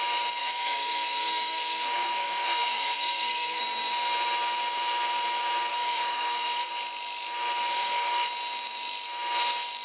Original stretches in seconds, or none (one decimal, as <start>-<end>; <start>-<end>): 0.0-0.4; 3.6-5.7; 6.7-7.7; 8.3-9.8